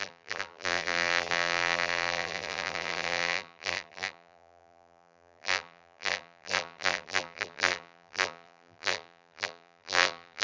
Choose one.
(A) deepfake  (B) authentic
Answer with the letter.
A